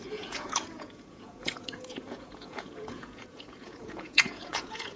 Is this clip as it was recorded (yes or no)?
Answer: no